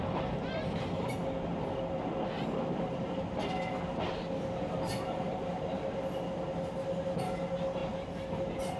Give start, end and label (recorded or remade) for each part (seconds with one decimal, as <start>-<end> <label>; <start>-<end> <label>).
0.0-7.8 recorded; 7.8-8.3 remade; 8.3-8.8 recorded